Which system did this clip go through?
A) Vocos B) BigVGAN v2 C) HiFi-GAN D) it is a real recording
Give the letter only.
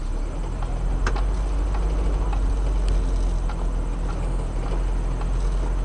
D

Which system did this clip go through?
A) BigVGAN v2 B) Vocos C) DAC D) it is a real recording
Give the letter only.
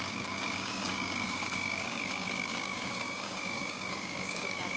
C